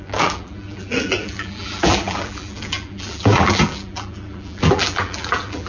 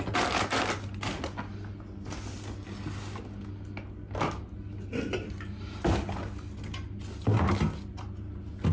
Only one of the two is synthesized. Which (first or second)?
first